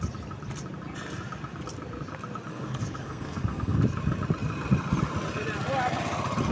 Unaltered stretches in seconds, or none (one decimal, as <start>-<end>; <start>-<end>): 0.0-2.5; 3.8-6.5